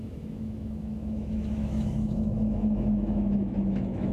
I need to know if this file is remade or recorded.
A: remade